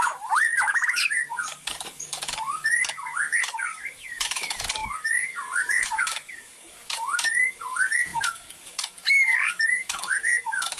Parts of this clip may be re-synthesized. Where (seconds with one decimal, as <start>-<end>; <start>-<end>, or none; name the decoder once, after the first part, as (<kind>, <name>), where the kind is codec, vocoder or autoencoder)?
0.0-10.8 (codec, DAC)